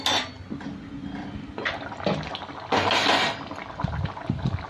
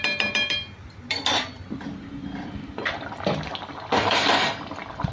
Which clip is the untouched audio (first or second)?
first